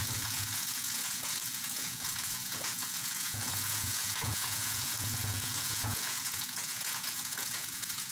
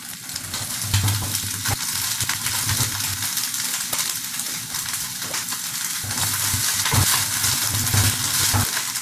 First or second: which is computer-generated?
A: first